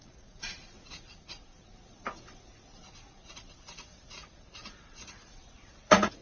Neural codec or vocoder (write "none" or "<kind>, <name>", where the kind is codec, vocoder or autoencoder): vocoder, Vocos